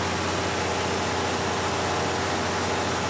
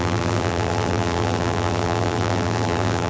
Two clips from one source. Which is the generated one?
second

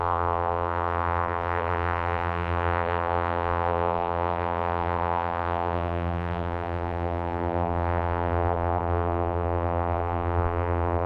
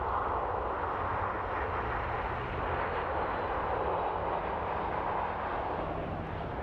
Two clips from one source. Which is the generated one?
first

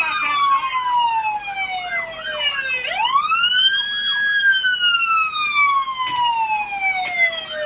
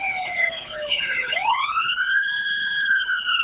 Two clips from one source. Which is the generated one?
second